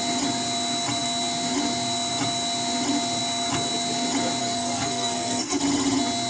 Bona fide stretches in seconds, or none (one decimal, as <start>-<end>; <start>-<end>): 0.0-4.4; 5.6-6.3